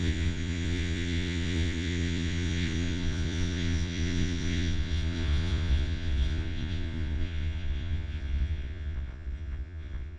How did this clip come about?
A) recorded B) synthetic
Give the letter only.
B